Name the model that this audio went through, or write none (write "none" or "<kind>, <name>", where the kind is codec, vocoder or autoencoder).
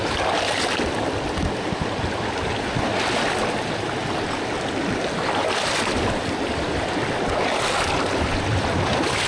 none